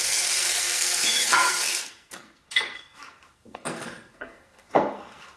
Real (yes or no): no